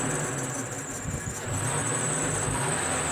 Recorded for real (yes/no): yes